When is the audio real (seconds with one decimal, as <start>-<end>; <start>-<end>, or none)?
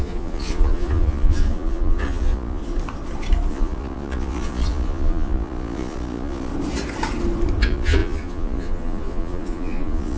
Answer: 2.6-3.5; 6.5-7.6